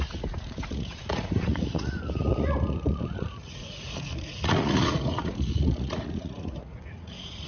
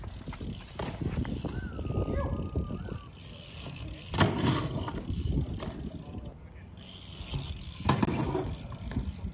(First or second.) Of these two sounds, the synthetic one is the first